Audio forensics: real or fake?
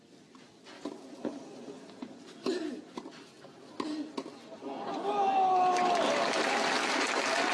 real